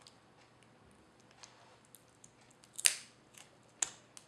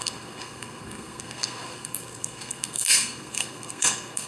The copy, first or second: second